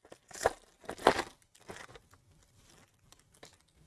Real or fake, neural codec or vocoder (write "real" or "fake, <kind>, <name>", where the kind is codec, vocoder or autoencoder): real